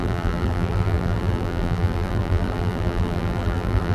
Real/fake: fake